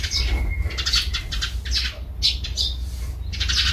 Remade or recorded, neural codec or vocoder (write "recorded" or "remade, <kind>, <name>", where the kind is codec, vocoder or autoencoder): recorded